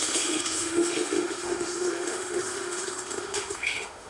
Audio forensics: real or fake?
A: fake